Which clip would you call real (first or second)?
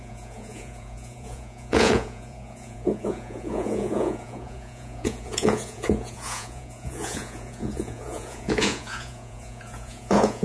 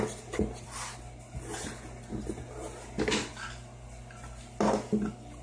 second